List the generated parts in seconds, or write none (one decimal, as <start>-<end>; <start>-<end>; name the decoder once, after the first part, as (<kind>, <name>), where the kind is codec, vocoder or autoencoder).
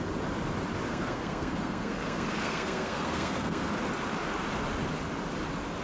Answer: 0.9-3.7 (codec, SNAC)